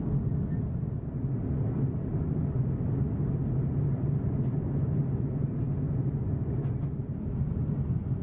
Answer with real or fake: real